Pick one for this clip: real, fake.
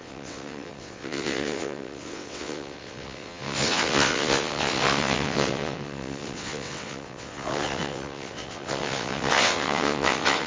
fake